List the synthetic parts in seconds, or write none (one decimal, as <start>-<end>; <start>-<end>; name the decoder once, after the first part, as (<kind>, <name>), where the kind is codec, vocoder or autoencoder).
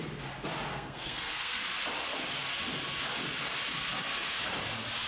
0.7-1.6 (codec, SNAC)